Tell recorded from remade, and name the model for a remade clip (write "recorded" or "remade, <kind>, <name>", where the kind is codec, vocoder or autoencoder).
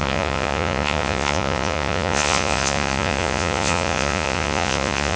remade, vocoder, Vocos